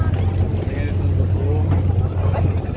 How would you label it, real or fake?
real